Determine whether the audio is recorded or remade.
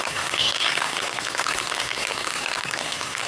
remade